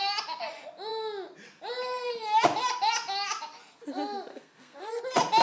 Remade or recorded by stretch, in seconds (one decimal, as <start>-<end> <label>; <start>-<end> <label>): 0.0-4.3 recorded; 4.3-5.0 remade; 5.0-5.4 recorded